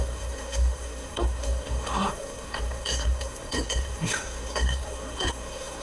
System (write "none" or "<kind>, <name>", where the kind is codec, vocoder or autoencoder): codec, SNAC